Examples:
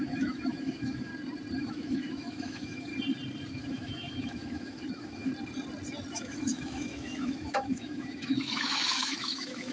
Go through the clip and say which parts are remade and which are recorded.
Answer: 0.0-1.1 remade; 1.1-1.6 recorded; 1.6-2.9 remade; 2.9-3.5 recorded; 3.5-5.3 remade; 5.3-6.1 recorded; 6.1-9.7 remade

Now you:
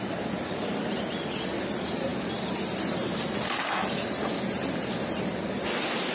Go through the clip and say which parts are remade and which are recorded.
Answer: 0.0-6.1 recorded

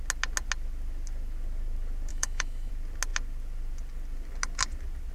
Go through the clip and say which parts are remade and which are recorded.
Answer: 0.0-2.1 recorded; 2.1-2.7 remade; 2.7-5.1 recorded

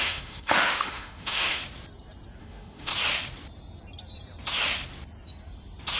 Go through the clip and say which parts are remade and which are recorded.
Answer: 0.0-1.6 remade; 1.6-2.4 recorded; 2.4-2.9 remade; 2.9-6.0 recorded

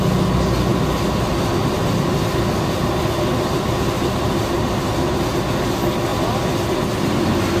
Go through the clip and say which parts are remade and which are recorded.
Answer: 0.0-7.6 recorded

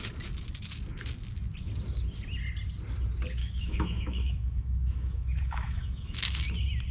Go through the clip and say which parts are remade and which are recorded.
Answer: 0.0-3.4 recorded; 3.4-6.4 remade; 6.4-6.9 recorded